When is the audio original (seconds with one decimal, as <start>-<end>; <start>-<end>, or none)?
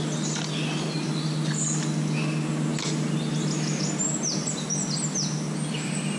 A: 0.0-6.2